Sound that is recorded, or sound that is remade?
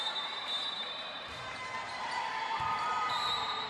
remade